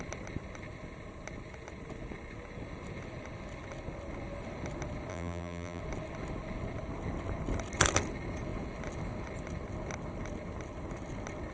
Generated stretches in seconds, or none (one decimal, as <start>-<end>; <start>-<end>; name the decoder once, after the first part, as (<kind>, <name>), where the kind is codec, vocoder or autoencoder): 5.1-5.8 (vocoder, BigVGAN v2)